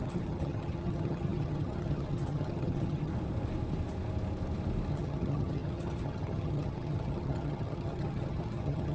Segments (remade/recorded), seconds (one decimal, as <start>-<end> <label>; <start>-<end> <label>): 0.0-3.1 remade; 3.1-4.9 recorded; 4.9-8.9 remade